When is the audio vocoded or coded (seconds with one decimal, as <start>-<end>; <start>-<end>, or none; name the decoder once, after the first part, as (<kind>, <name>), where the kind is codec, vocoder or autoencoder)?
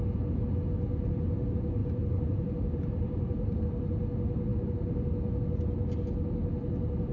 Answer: 1.8-3.6 (vocoder, BigVGAN v2)